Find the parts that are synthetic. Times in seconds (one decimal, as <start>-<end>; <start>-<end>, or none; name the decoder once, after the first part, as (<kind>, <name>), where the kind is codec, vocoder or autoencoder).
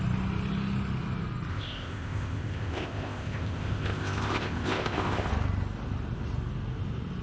1.5-5.3 (codec, ZipCodec)